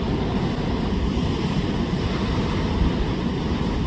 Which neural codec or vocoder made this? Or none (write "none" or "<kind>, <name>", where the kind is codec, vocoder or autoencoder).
none